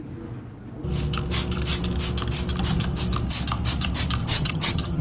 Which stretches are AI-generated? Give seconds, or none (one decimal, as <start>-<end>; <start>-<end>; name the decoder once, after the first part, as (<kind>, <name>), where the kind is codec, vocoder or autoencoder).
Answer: 4.2-5.0 (vocoder, HiFi-GAN)